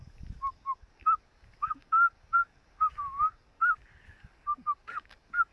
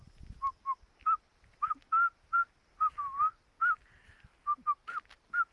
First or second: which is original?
second